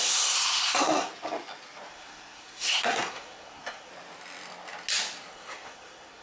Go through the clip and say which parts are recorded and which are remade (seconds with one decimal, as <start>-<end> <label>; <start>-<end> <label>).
0.0-1.1 remade; 1.1-1.9 recorded; 1.9-3.9 remade; 3.9-5.3 recorded; 5.3-6.2 remade